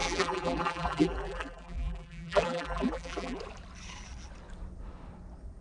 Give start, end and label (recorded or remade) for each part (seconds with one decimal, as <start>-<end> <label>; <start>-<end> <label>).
0.0-3.4 remade; 3.4-5.6 recorded